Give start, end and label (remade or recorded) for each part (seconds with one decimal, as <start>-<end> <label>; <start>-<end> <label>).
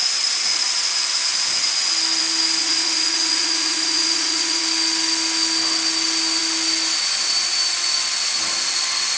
0.0-2.6 recorded; 2.6-4.6 remade; 4.6-9.2 recorded